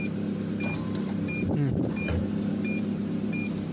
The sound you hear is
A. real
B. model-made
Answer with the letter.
B